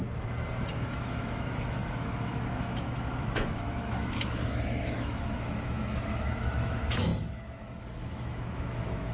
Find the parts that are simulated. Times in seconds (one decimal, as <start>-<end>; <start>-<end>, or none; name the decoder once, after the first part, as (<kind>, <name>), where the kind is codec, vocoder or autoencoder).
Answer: 0.8-9.1 (autoencoder, DAC-VAE)